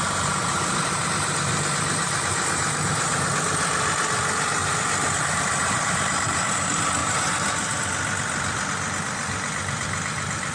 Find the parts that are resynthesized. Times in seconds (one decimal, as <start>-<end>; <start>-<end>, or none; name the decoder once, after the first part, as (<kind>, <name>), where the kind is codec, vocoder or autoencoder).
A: 0.5-3.3 (vocoder, BigVGAN v2); 4.6-6.0; 7.0-7.9